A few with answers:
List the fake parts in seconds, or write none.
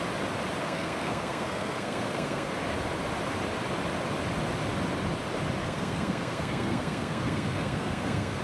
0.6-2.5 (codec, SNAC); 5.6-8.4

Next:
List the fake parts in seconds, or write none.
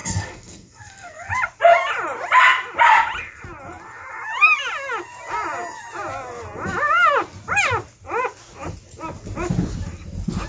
0.0-1.3 (codec, SNAC)